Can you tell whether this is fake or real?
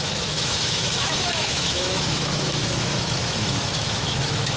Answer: fake